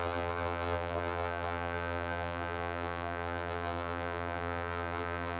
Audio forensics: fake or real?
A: fake